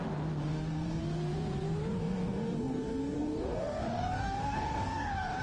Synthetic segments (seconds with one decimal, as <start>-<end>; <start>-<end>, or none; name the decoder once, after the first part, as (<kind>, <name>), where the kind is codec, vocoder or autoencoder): 0.5-1.0 (codec, DAC); 2.0-5.4